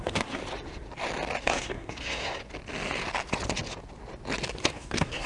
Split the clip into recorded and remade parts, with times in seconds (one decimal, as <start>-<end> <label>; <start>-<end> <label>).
0.0-0.4 remade; 0.4-1.4 recorded; 1.4-2.4 remade; 2.4-4.7 recorded; 4.7-5.3 remade